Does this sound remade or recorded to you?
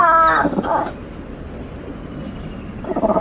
recorded